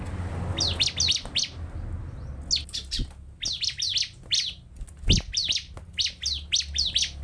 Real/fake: real